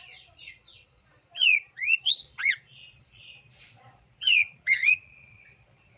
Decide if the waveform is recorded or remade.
remade